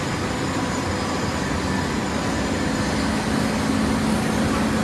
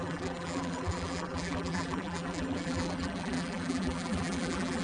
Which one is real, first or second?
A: first